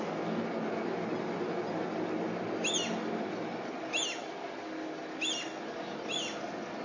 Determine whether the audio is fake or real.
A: real